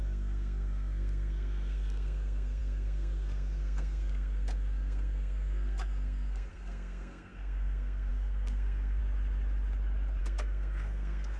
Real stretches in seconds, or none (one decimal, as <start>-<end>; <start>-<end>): 9.0-10.2